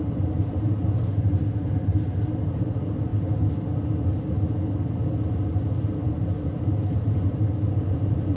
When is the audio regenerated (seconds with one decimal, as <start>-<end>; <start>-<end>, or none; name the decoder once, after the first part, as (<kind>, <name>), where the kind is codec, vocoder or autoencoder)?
0.0-1.9 (vocoder, BigVGAN v2); 2.5-3.1; 5.9-8.4